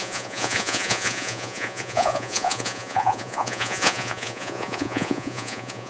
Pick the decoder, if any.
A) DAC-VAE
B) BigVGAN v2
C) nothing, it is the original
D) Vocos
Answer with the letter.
D